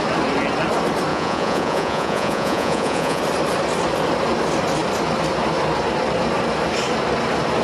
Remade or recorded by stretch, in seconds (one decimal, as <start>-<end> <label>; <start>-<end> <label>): 0.0-1.1 recorded; 1.1-3.2 remade; 3.2-7.6 recorded